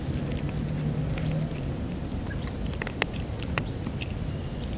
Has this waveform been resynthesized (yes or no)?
no